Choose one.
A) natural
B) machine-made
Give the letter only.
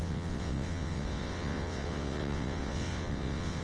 B